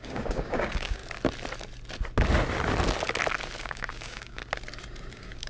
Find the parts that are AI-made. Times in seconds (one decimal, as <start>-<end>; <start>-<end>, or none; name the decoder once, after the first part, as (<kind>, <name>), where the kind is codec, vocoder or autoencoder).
0.0-1.0 (codec, DAC); 3.6-4.4; 5.1-5.5